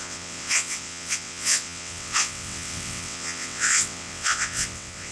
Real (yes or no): no